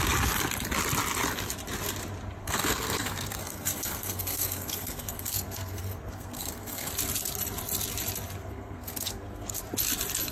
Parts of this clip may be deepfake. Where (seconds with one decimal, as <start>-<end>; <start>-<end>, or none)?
2.4-6.9; 8.4-9.6